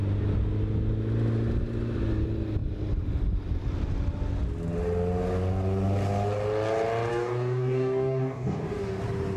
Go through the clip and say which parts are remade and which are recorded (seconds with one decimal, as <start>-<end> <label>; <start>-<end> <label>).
0.0-7.1 recorded; 7.1-9.0 remade; 9.0-9.4 recorded